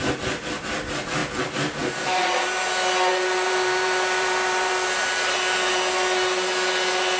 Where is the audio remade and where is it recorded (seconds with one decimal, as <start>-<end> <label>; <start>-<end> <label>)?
0.0-3.1 recorded; 3.1-4.7 remade; 4.7-7.2 recorded